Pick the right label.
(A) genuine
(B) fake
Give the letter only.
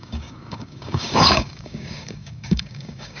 B